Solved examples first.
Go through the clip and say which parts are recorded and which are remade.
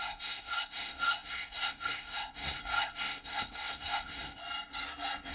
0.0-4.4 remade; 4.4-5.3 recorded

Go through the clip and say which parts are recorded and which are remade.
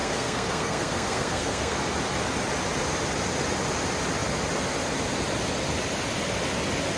0.0-1.8 remade; 1.8-7.0 recorded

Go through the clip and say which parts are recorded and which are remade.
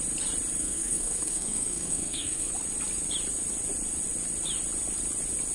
0.0-0.6 recorded; 0.6-2.5 remade; 2.5-5.5 recorded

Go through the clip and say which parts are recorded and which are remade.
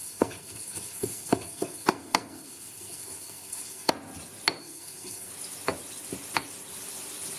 0.0-3.9 remade; 3.9-4.6 recorded; 4.6-5.3 remade; 5.3-7.4 recorded